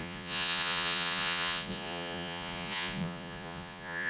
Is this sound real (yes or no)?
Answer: no